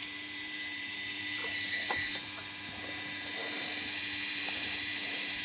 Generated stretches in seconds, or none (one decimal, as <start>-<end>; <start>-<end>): 0.0-1.4; 3.2-3.7; 4.3-5.4